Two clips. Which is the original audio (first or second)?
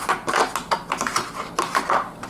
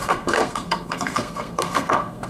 first